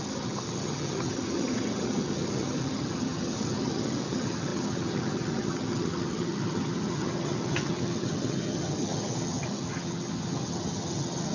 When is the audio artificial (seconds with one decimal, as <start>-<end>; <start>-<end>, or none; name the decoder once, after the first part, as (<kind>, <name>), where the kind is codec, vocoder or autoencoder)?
0.0-11.3 (vocoder, HiFi-GAN)